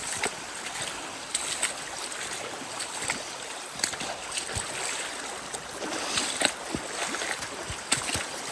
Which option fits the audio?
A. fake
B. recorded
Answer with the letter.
B